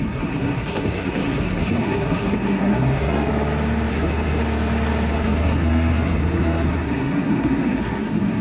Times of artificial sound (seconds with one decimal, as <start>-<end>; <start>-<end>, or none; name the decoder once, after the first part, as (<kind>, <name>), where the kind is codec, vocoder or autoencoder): 0.0-3.3 (codec, SNAC); 3.9-4.4; 5.1-8.4